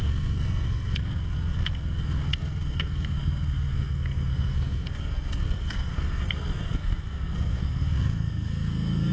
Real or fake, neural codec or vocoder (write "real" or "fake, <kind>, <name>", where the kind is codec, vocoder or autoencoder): fake, codec, SNAC